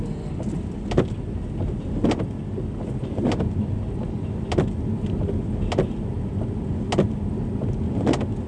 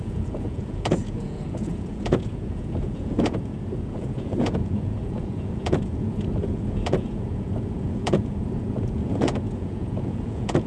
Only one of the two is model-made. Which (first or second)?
second